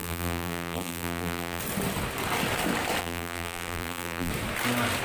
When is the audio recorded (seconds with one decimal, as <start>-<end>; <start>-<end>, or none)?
1.6-3.0; 4.3-5.0

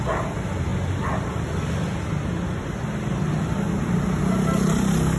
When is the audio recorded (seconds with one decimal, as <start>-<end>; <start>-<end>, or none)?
0.0-5.2